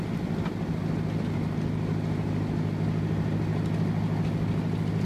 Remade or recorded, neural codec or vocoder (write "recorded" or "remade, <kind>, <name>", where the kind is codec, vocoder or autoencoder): recorded